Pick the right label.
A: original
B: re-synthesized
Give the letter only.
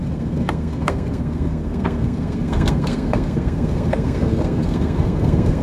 B